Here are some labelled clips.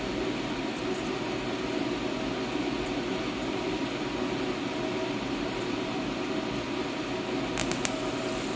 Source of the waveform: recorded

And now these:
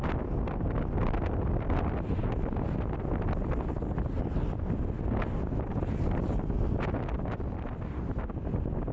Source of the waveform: recorded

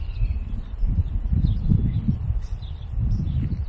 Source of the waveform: remade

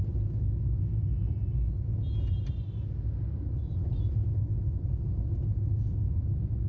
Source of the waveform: recorded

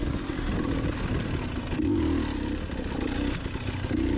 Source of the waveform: recorded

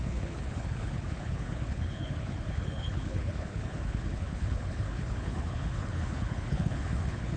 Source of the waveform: remade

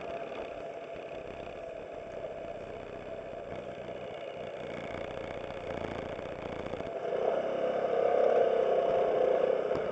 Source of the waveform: recorded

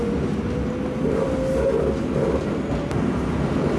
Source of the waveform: recorded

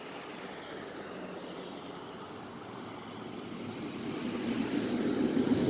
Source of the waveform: recorded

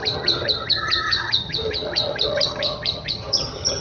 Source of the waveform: remade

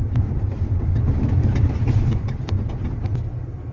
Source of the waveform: remade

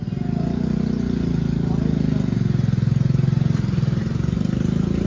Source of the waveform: recorded